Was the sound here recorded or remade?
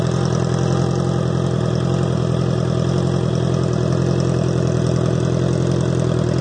recorded